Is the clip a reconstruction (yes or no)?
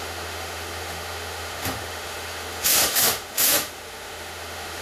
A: yes